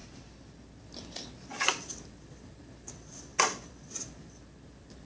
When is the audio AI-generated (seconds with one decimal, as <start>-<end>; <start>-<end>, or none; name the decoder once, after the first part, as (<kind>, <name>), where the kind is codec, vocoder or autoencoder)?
none